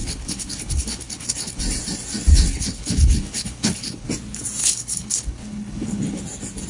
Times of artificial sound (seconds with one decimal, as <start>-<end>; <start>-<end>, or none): 0.0-1.6; 2.5-4.1; 4.6-6.2